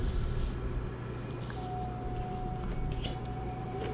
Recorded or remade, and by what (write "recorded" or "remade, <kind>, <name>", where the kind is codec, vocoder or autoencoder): recorded